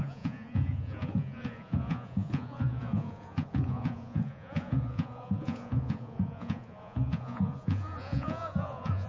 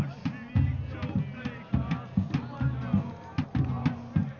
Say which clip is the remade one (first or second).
first